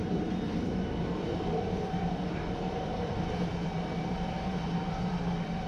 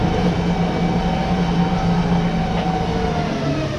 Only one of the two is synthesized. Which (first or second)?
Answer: first